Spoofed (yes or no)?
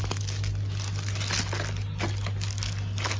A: no